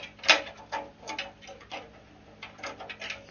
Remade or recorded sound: recorded